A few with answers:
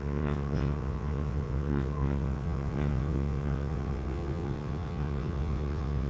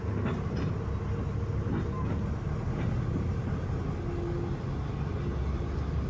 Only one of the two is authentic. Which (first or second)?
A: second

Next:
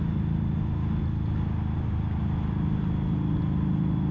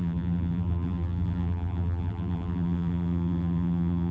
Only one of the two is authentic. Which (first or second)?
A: first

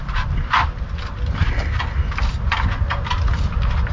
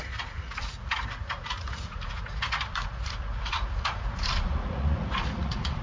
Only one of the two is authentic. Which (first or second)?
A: first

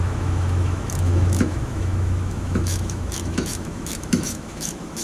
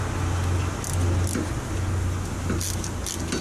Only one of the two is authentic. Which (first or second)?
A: second